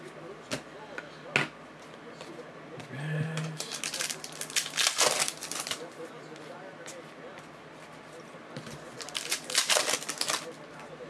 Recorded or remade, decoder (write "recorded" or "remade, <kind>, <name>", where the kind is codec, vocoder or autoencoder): recorded